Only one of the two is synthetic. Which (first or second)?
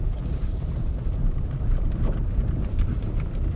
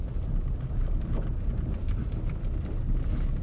first